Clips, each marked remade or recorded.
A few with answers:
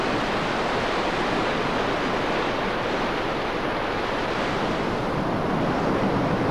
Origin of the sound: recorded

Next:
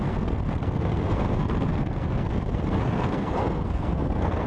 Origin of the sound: remade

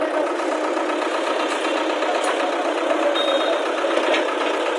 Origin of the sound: recorded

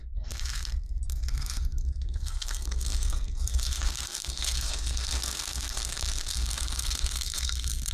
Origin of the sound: remade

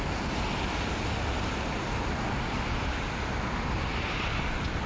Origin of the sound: recorded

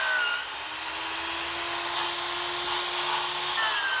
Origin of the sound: recorded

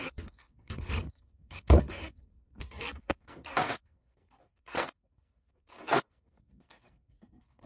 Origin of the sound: remade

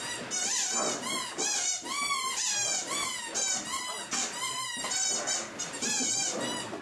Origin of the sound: recorded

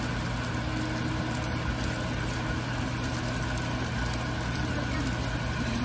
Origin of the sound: recorded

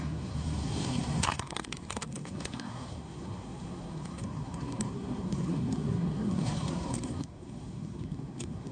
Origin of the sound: remade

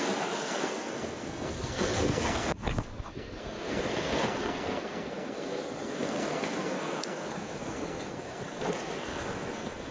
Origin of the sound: remade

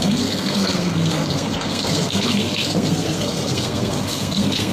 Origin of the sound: remade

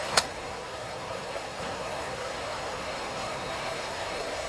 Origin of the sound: remade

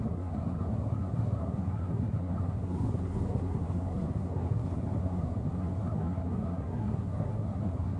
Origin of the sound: remade